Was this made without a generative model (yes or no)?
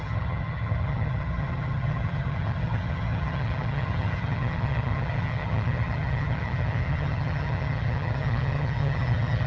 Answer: no